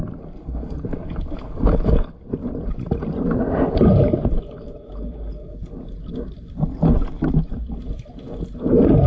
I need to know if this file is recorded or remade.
recorded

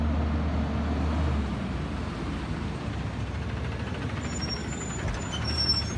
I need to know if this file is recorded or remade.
recorded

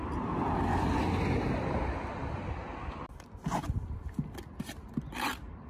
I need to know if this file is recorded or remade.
recorded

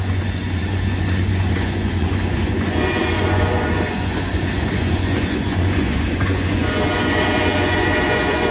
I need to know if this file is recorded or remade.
remade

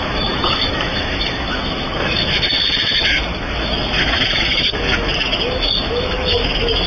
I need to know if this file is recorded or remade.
remade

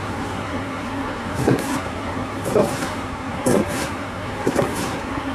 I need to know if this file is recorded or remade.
remade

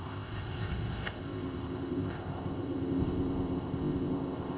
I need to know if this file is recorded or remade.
remade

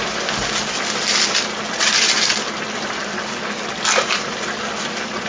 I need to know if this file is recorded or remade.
recorded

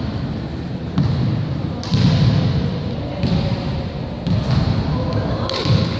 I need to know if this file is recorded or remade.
recorded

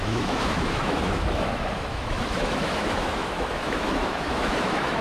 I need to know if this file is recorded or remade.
remade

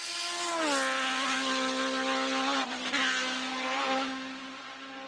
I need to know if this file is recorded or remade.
recorded